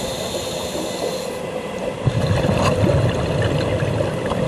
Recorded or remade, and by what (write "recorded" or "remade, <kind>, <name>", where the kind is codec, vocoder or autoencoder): recorded